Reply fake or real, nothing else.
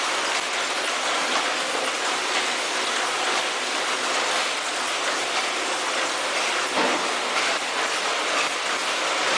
real